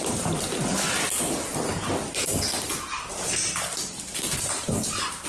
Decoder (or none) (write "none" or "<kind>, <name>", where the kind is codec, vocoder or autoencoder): none